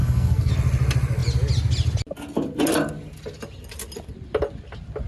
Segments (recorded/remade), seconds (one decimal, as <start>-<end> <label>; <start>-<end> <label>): 0.0-0.5 remade; 0.5-5.1 recorded